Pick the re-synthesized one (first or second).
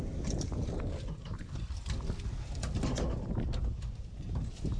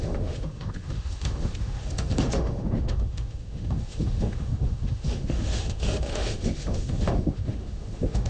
second